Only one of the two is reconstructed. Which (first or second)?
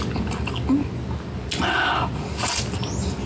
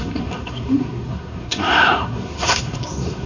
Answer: second